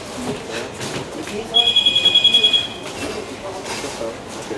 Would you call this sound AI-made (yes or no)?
no